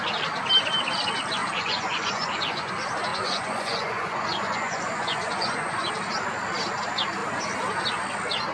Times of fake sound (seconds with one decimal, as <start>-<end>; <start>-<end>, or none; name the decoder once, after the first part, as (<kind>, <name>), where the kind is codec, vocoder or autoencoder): 1.4-2.7 (vocoder, Vocos); 3.1-5.9